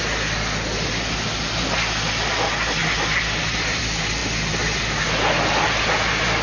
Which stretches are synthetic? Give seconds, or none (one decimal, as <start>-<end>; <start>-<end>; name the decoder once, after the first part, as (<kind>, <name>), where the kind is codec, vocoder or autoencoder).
2.8-3.8 (vocoder, BigVGAN v2)